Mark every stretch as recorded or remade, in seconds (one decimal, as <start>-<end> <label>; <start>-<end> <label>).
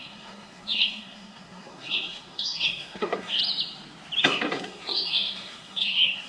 0.0-3.4 remade; 3.4-4.2 recorded; 4.2-6.3 remade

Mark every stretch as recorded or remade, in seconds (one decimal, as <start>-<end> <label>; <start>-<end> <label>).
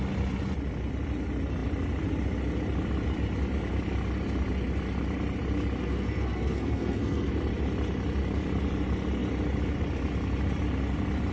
0.0-5.8 recorded; 5.8-7.3 remade; 7.3-11.3 recorded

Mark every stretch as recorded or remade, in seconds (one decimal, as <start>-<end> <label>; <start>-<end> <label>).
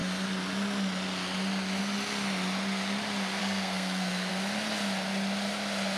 0.0-3.4 recorded; 3.4-4.3 remade; 4.3-6.0 recorded